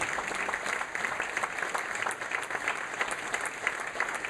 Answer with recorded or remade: recorded